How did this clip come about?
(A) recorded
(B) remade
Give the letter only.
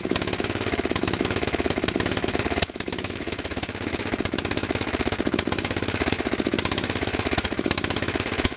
B